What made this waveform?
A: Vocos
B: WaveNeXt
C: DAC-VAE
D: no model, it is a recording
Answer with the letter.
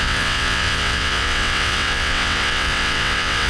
B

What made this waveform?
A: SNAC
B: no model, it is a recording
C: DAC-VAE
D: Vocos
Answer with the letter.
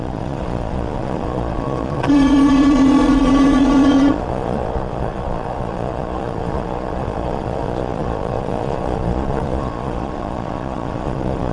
D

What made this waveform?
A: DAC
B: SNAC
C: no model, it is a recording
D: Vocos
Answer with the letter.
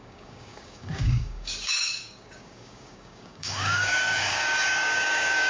A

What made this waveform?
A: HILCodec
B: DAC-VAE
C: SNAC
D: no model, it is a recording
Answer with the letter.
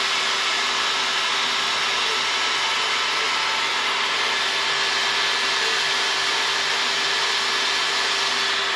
D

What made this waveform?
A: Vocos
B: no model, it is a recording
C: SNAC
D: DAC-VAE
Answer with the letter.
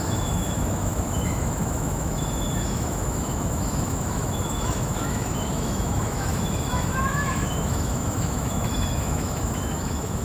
D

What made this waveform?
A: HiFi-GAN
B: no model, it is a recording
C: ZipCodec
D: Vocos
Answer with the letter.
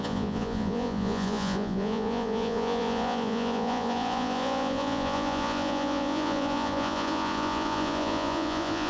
D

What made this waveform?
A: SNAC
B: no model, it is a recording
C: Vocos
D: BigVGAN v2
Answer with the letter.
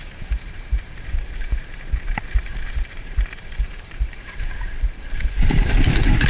D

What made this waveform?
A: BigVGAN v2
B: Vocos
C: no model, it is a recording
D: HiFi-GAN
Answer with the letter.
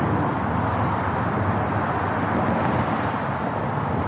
C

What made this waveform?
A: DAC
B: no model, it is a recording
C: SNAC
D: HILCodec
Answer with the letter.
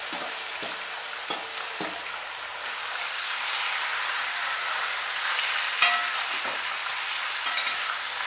B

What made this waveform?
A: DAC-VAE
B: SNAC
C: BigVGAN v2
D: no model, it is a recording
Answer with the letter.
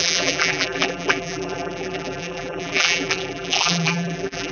C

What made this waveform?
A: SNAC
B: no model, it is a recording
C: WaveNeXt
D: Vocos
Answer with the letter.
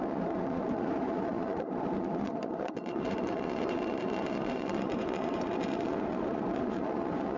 D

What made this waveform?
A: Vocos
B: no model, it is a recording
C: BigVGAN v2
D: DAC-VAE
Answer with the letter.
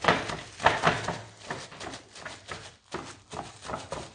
B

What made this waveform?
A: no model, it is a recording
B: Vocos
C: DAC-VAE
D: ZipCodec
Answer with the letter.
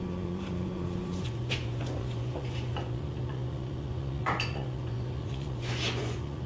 B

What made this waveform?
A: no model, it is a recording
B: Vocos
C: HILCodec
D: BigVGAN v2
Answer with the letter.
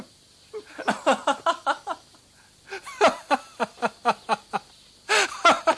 A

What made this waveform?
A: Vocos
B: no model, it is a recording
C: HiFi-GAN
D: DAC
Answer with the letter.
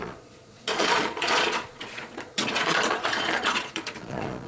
A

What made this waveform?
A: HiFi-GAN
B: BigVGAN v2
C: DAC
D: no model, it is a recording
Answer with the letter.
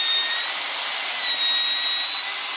D